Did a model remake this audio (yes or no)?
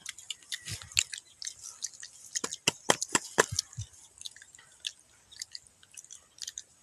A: no